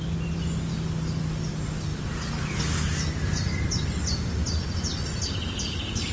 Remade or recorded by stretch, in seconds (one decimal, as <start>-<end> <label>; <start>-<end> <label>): 0.0-6.1 recorded